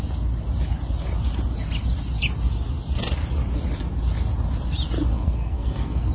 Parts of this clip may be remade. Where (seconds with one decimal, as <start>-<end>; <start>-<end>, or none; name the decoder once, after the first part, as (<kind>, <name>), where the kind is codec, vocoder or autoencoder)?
5.1-6.1 (codec, SNAC)